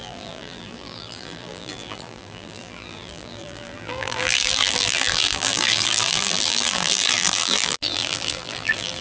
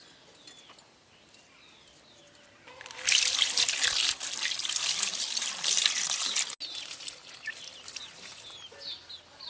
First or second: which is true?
second